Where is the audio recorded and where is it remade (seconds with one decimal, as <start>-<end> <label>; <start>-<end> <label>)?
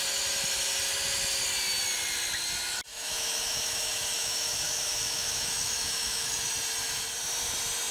0.0-2.9 recorded; 2.9-6.5 remade; 6.5-7.9 recorded